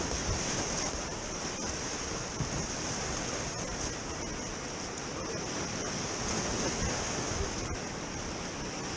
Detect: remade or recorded recorded